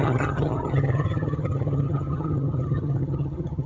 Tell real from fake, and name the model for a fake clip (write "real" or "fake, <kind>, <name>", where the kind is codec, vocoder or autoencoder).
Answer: fake, vocoder, HiFi-GAN